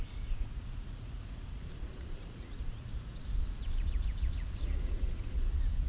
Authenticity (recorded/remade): remade